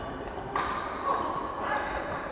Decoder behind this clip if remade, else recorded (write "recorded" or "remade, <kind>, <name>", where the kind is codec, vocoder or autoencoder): recorded